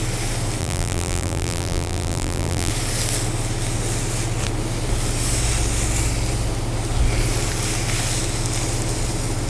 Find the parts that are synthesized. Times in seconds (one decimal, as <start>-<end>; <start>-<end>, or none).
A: 0.6-2.7